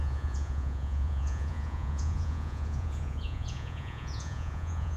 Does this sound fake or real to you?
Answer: fake